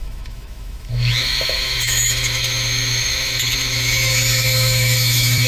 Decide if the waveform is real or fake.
fake